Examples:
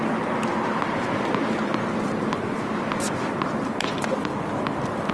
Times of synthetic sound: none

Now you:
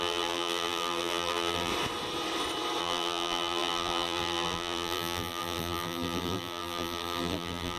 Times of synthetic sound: 0.0-1.7 (vocoder, BigVGAN v2); 2.8-7.8

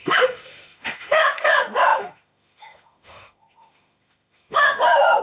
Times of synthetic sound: 0.0-5.2 (autoencoder, DAC-VAE)

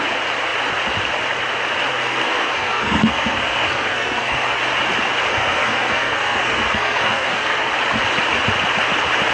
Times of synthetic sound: 1.9-4.6 (codec, SNAC); 5.3-7.7

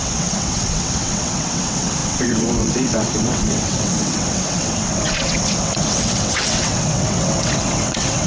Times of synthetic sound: 0.0-8.3 (vocoder, WaveNeXt)

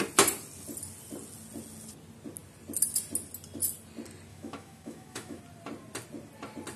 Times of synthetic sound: 4.3-5.4 (autoencoder, DAC-VAE)